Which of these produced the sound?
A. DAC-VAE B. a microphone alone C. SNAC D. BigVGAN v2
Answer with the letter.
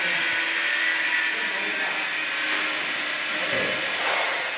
B